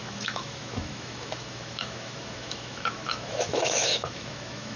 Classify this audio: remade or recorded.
remade